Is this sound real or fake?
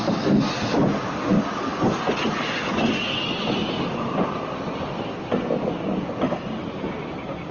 real